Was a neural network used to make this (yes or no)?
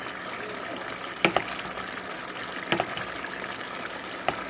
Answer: no